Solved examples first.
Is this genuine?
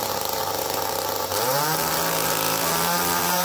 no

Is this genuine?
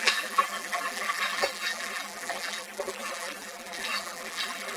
no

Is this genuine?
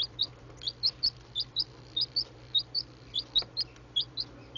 no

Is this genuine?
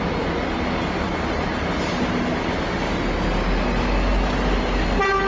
yes